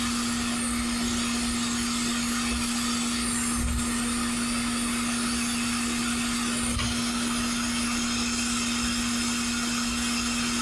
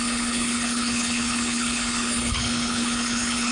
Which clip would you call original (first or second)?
first